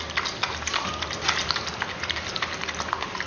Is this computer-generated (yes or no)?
no